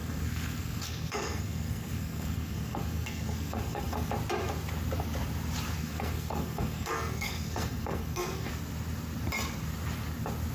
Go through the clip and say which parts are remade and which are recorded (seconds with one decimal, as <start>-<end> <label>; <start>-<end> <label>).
0.0-4.1 remade; 4.1-5.8 recorded; 5.8-8.5 remade; 8.5-10.5 recorded